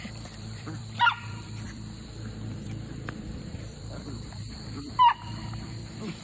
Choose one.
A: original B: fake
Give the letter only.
B